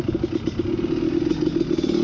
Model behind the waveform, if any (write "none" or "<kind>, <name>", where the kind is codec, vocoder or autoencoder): none